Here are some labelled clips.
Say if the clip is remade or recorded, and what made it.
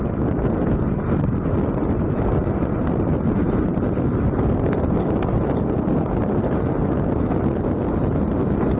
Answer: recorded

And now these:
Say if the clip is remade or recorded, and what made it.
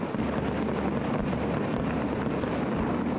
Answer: recorded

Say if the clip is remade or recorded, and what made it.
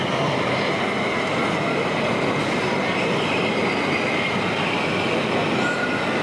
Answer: recorded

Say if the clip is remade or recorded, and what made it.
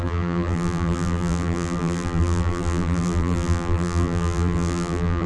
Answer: remade, vocoder, BigVGAN v2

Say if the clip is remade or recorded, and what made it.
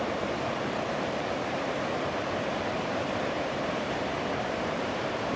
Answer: remade, vocoder, BigVGAN v2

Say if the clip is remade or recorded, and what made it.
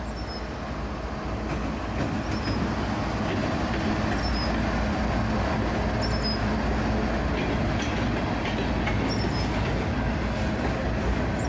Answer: recorded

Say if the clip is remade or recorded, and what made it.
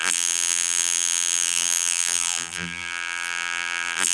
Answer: remade, vocoder, BigVGAN v2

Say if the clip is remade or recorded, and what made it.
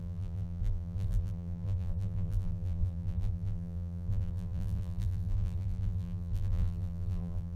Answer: remade, vocoder, BigVGAN v2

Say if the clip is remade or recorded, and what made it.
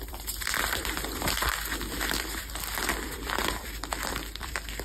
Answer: remade, vocoder, BigVGAN v2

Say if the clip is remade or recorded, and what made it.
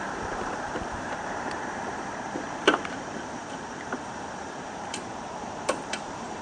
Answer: remade, vocoder, BigVGAN v2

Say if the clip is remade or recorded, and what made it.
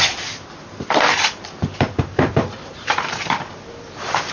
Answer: remade, vocoder, BigVGAN v2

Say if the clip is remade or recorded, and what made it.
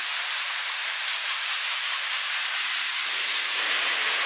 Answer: remade, vocoder, BigVGAN v2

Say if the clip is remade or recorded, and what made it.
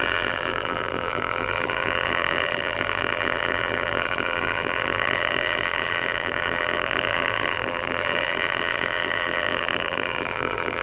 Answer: remade, vocoder, BigVGAN v2